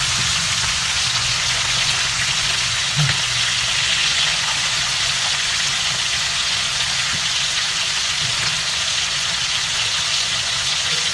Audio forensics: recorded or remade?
remade